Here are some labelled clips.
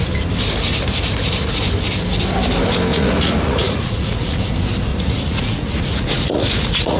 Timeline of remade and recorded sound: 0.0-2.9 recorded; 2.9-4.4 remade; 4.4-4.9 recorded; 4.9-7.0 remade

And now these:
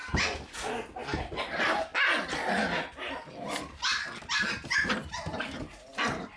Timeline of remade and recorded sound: 0.0-6.4 recorded

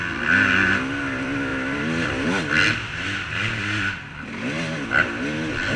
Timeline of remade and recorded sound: 0.0-5.8 recorded

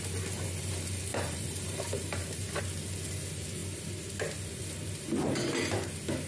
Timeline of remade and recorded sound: 0.0-1.1 recorded; 1.1-2.6 remade; 2.6-6.3 recorded

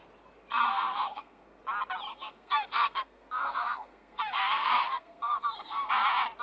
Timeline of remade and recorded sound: 0.0-0.7 recorded; 0.7-1.6 remade; 1.6-2.1 recorded; 2.1-5.9 remade; 5.9-6.4 recorded

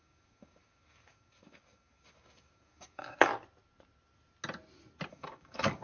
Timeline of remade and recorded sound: 0.0-3.3 remade; 3.3-5.1 recorded; 5.1-5.8 remade